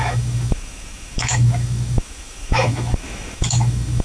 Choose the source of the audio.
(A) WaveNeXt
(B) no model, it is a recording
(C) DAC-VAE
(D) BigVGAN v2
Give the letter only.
C